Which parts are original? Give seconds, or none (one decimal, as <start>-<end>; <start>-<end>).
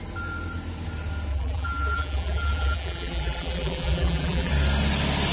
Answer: 0.0-1.3; 4.5-5.3